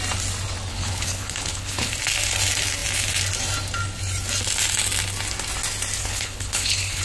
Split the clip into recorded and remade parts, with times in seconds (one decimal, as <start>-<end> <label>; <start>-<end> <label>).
0.0-0.7 recorded; 0.7-1.9 remade; 1.9-6.0 recorded; 6.0-7.0 remade